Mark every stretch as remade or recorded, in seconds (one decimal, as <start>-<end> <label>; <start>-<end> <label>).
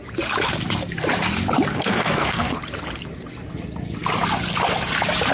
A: 0.0-1.7 recorded; 1.7-2.6 remade; 2.6-5.3 recorded